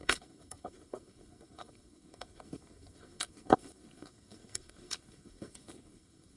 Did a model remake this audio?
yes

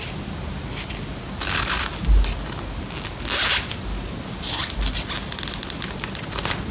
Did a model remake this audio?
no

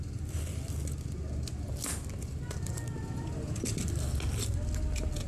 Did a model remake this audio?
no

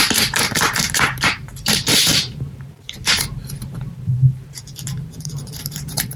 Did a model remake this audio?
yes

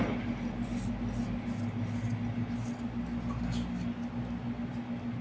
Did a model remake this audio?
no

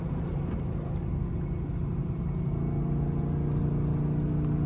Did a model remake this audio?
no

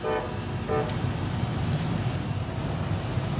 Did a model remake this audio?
no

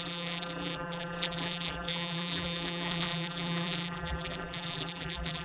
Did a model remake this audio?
yes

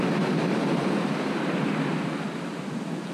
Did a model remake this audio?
yes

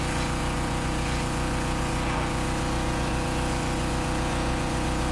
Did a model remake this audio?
yes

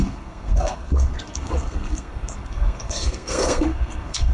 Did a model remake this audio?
yes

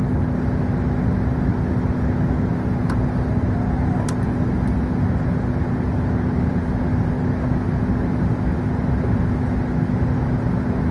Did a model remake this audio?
no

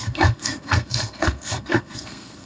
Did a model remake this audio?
yes